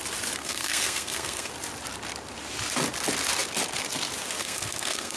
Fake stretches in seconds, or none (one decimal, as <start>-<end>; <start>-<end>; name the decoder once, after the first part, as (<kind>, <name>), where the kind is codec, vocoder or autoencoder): 0.4-1.5 (codec, SNAC); 4.4-5.2

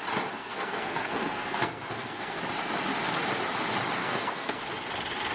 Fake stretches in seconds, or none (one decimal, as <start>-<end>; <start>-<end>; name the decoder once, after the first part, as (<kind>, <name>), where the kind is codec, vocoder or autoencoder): 0.4-2.4 (codec, SNAC); 4.0-4.6